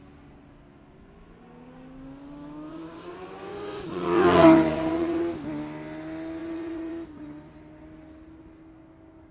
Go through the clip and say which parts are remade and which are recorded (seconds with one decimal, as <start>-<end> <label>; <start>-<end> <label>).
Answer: 0.0-2.7 recorded; 2.7-5.2 remade; 5.2-6.4 recorded; 6.4-6.9 remade; 6.9-9.3 recorded